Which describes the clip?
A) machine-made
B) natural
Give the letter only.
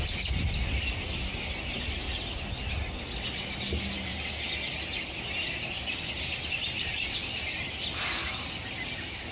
B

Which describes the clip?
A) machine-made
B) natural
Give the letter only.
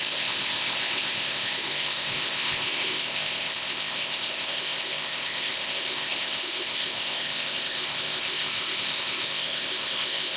A